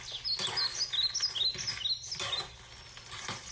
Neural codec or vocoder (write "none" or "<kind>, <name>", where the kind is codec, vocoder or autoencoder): none